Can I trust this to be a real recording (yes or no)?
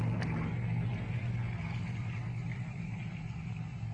yes